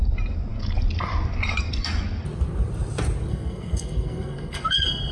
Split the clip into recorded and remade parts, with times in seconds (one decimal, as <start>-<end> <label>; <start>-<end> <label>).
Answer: 0.0-3.3 recorded; 3.3-5.1 remade